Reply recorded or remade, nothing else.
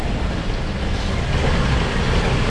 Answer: recorded